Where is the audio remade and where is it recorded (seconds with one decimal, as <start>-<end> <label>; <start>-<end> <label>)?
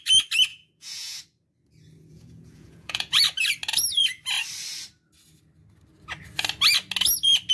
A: 0.0-0.5 recorded; 0.5-1.2 remade; 1.2-2.1 recorded; 2.1-3.2 remade; 3.2-7.5 recorded